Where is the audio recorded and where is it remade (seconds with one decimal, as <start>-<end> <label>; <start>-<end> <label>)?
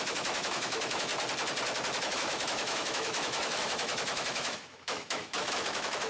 0.0-1.1 remade; 1.1-2.0 recorded; 2.0-6.1 remade